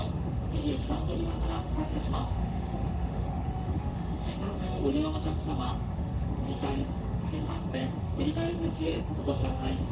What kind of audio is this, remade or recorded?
remade